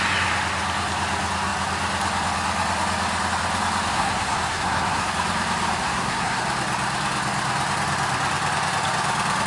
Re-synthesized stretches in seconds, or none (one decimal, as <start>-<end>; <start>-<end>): 3.9-5.1; 5.8-6.4